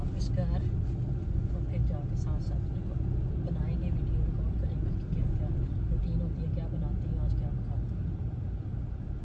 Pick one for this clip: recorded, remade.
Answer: recorded